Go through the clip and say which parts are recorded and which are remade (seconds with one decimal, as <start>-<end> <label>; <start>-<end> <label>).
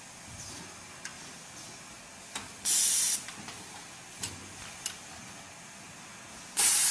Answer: 0.0-6.9 recorded